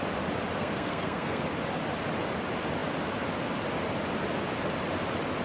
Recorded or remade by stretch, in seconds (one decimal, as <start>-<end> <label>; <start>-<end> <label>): 0.0-0.6 recorded; 0.6-1.4 remade; 1.4-5.4 recorded